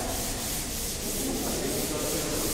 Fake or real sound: real